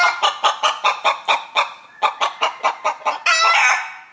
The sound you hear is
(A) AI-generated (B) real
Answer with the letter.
B